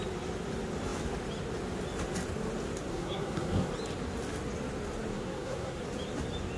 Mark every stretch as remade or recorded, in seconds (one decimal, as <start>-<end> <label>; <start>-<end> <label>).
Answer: 0.0-2.9 recorded; 2.9-3.7 remade; 3.7-5.1 recorded; 5.1-5.8 remade; 5.8-6.6 recorded